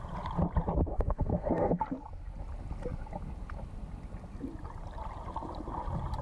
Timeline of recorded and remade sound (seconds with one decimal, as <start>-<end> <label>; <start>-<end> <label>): 0.0-0.9 recorded; 0.9-1.8 remade; 1.8-6.2 recorded